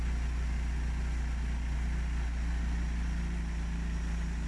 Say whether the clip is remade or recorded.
recorded